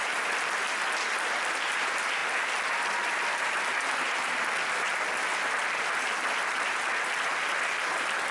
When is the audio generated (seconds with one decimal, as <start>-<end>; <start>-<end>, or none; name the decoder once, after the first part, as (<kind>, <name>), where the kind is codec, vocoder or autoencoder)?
none